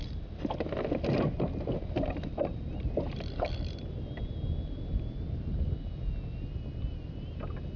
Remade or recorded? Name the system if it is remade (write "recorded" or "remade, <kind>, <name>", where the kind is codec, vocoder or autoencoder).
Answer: recorded